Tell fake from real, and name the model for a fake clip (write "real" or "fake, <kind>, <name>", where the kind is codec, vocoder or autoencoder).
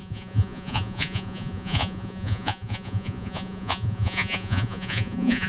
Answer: fake, vocoder, Vocos